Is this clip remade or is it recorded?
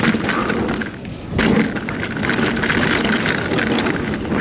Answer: recorded